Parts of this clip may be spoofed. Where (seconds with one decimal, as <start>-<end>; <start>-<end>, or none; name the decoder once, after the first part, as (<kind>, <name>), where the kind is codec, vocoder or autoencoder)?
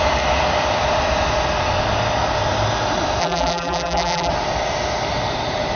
3.2-4.3 (vocoder, BigVGAN v2)